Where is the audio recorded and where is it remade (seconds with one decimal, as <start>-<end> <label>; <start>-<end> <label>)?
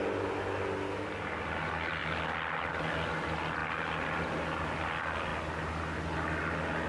0.0-6.9 recorded